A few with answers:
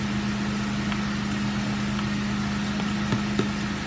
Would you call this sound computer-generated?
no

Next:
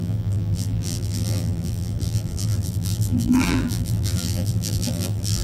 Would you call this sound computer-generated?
yes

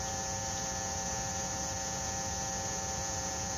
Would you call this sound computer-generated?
yes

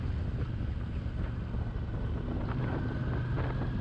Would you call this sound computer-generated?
no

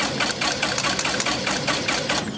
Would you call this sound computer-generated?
no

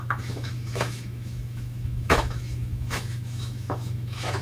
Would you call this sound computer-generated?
yes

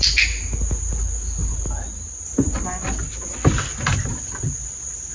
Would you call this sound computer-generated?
no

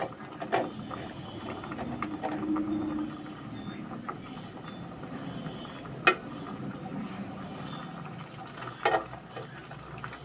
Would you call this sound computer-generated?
no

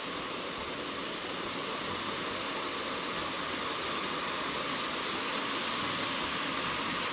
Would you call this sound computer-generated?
no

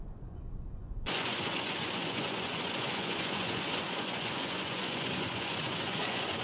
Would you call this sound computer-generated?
yes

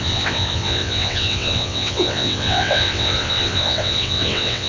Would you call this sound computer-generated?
yes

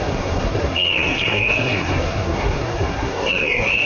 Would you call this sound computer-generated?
yes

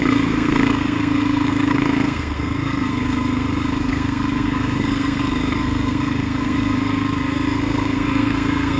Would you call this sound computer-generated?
yes